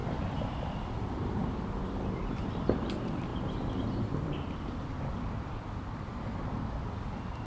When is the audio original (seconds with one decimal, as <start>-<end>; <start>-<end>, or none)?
1.4-2.2